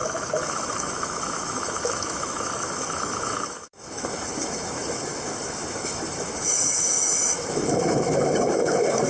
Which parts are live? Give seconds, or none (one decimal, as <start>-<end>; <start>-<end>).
none